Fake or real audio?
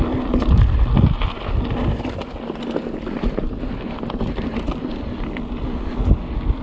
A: real